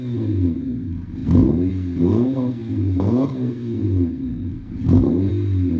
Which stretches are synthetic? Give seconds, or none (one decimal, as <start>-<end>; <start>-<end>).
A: 0.0-5.3